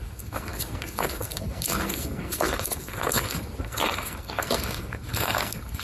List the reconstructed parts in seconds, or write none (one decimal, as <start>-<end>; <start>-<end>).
0.0-5.8